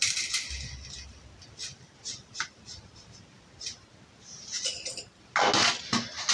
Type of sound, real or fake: real